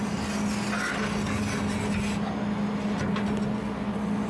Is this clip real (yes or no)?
yes